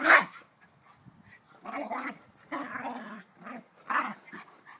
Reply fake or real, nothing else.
real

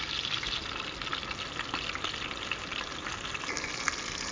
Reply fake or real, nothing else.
real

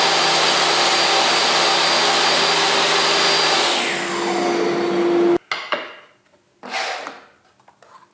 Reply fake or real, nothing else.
real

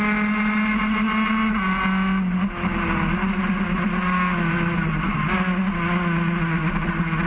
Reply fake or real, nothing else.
real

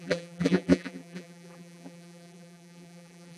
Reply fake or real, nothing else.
fake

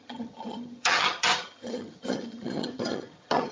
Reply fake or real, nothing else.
fake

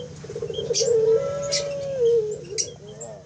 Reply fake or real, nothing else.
real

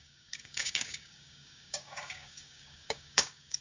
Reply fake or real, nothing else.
fake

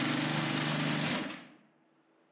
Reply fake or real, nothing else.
real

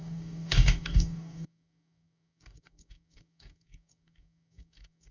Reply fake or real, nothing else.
fake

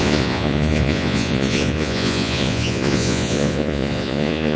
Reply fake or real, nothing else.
fake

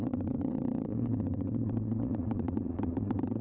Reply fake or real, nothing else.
fake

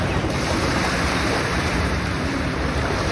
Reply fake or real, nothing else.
fake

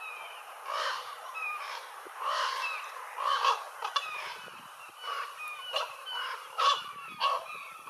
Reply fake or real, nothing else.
fake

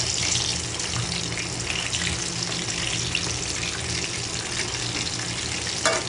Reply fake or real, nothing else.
real